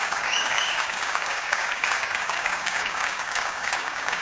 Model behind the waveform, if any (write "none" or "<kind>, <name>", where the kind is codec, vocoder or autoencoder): codec, DAC